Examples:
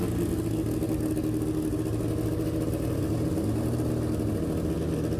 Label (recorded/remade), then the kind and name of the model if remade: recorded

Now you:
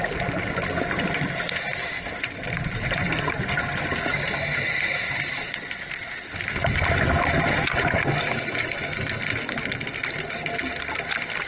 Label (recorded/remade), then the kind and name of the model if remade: recorded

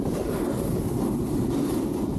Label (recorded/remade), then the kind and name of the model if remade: recorded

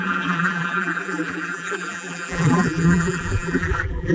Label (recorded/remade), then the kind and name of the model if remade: remade, vocoder, BigVGAN v2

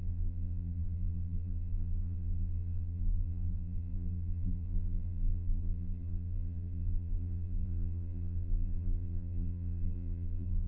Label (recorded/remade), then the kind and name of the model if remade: remade, vocoder, BigVGAN v2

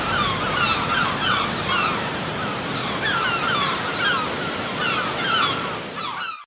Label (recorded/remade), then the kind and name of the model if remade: recorded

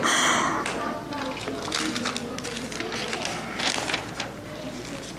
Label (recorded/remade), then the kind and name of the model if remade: recorded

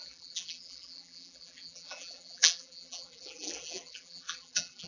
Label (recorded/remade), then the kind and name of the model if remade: remade, vocoder, BigVGAN v2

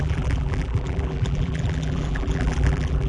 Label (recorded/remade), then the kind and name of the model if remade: remade, vocoder, BigVGAN v2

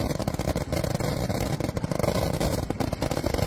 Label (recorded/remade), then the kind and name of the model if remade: recorded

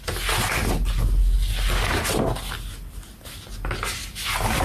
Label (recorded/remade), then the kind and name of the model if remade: recorded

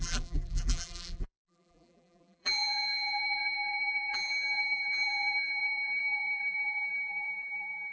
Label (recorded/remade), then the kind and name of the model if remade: remade, vocoder, BigVGAN v2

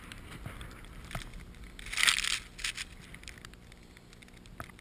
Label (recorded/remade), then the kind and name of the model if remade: recorded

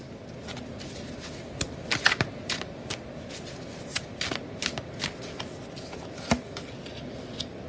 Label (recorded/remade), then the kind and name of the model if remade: recorded